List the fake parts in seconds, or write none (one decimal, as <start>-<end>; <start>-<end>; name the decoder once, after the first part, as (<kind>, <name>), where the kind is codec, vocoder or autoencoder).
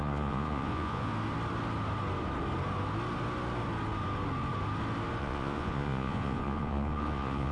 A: 0.0-1.1 (vocoder, Vocos); 5.2-7.5